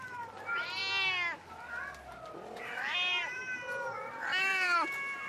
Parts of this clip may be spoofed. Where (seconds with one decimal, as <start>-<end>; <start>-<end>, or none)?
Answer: 0.0-0.8; 2.6-3.4; 4.1-5.3